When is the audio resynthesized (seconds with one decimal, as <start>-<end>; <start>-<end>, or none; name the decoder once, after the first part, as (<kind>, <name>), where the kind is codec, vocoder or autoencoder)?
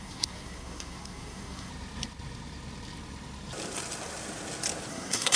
0.0-1.7 (codec, SNAC); 4.9-5.4